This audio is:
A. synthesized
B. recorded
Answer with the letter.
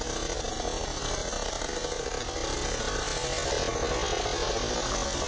B